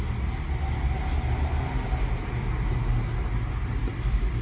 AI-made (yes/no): no